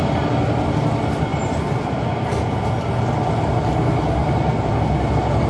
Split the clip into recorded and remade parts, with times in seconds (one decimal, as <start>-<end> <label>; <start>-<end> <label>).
0.0-1.3 recorded; 1.3-1.9 remade; 1.9-4.2 recorded; 4.2-4.8 remade; 4.8-5.5 recorded

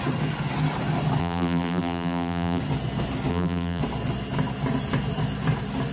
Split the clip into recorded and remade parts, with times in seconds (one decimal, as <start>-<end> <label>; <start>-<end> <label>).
0.0-1.2 recorded; 1.2-2.6 remade; 2.6-3.3 recorded; 3.3-3.8 remade; 3.8-5.9 recorded

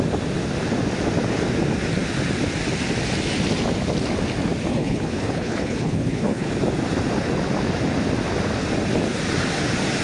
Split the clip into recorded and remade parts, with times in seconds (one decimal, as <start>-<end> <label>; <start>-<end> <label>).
0.0-4.7 recorded; 4.7-6.5 remade; 6.5-10.0 recorded

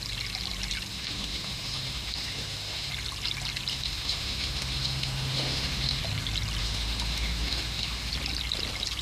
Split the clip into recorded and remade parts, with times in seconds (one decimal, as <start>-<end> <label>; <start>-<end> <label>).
0.0-0.9 recorded; 0.9-2.9 remade; 2.9-3.7 recorded; 3.7-6.0 remade; 6.0-6.6 recorded; 6.6-8.1 remade; 8.1-9.0 recorded

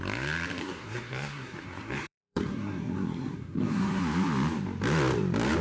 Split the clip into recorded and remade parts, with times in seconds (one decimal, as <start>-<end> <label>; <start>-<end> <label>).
0.0-0.6 recorded; 0.6-4.0 remade; 4.0-5.6 recorded

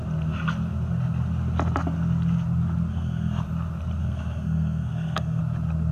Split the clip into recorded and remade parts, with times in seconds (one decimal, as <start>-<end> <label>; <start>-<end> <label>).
0.0-2.9 recorded; 2.9-3.4 remade; 3.4-4.0 recorded; 4.0-5.4 remade; 5.4-5.9 recorded

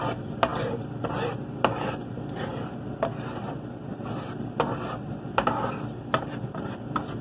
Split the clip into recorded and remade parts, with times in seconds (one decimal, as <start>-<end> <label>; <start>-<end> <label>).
0.0-3.9 recorded; 3.9-4.5 remade; 4.5-7.2 recorded